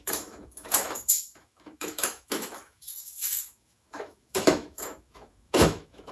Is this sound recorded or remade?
remade